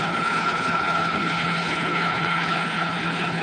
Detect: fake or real fake